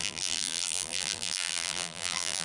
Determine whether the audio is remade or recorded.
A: remade